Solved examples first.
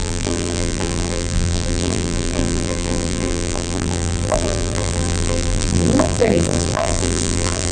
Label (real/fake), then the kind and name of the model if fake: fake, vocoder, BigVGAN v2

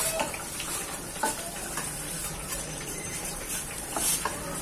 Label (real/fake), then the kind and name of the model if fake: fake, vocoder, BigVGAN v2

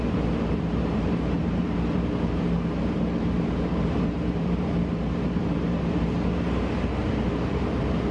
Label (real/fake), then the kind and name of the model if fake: fake, vocoder, BigVGAN v2